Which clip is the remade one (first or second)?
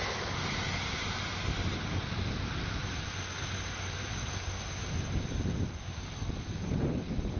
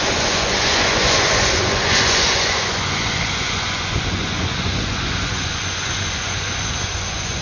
second